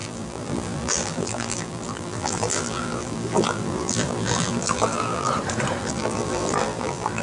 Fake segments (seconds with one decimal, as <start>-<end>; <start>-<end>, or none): 0.0-5.3; 5.8-7.2